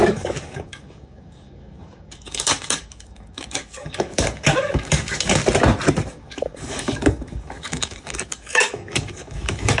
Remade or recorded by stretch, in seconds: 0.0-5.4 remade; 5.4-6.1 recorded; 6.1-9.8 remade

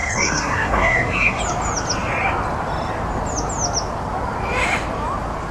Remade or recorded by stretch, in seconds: 0.0-1.4 remade; 1.4-5.5 recorded

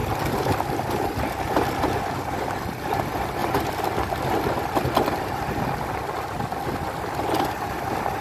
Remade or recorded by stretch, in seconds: 0.0-8.2 recorded

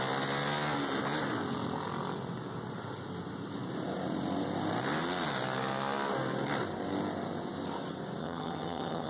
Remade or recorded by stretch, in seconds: 0.0-8.2 recorded; 8.2-9.1 remade

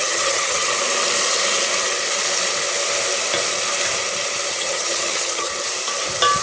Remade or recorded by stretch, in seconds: 0.0-0.7 remade; 0.7-4.5 recorded; 4.5-5.5 remade; 5.5-6.4 recorded

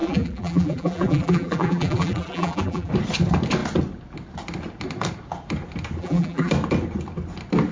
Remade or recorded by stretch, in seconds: 0.0-2.9 remade; 2.9-6.0 recorded; 6.0-6.5 remade; 6.5-7.7 recorded

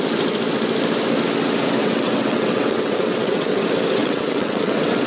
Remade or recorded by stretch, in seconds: 0.0-1.8 recorded; 1.8-3.6 remade; 3.6-4.0 recorded; 4.0-5.1 remade